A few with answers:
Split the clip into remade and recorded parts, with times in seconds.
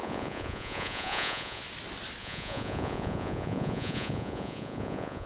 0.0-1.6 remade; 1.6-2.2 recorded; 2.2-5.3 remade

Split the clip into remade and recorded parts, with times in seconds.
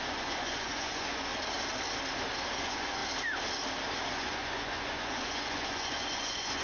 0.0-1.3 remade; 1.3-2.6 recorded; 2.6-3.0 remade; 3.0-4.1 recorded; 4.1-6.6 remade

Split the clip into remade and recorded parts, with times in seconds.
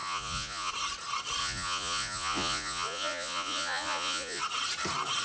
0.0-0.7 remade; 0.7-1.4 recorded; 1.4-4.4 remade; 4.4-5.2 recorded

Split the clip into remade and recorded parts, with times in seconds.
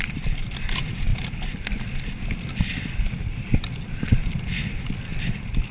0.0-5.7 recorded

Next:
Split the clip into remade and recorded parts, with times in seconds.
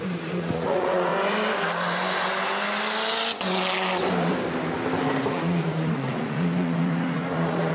0.0-1.1 remade; 1.1-5.3 recorded; 5.3-7.7 remade